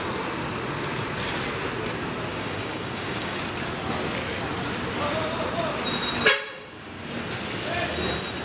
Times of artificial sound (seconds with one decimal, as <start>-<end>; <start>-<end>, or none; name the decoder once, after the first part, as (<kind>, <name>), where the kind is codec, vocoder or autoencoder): 2.3-3.4 (codec, DAC)

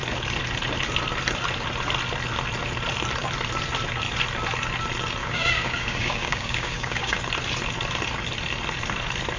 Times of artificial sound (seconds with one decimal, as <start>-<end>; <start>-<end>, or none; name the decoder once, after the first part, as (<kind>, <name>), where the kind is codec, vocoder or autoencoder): 5.2-7.2 (codec, DAC)

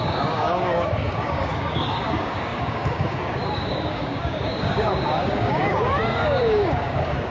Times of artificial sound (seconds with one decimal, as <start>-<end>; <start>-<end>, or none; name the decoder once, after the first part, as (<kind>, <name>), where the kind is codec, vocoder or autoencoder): 0.0-7.3 (codec, DAC)

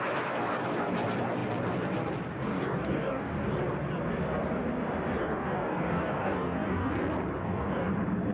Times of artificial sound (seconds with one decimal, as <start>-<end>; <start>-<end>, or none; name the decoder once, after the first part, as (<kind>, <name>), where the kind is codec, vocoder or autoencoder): 2.5-3.3 (codec, DAC); 5.2-6.9; 7.4-7.9

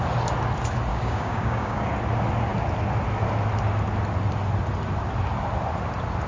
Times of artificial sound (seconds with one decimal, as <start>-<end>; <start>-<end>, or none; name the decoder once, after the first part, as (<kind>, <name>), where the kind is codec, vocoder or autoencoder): 0.9-1.9 (codec, DAC)

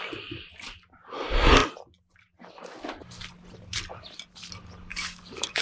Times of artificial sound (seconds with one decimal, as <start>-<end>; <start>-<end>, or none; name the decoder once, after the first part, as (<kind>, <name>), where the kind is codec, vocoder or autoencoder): 4.9-5.6 (codec, DAC)

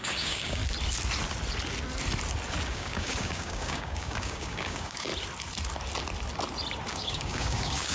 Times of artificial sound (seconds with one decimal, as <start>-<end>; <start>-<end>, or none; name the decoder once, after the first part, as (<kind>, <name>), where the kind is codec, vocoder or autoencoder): 0.0-0.6 (codec, DAC); 2.7-5.1; 6.9-7.9